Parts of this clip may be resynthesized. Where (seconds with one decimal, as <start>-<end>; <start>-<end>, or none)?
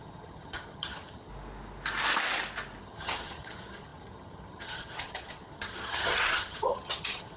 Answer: 0.0-1.3; 2.8-7.4